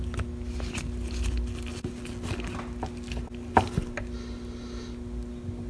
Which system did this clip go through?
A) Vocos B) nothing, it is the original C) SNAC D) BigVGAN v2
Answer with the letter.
B